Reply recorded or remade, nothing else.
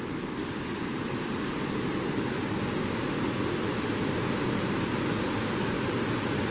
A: recorded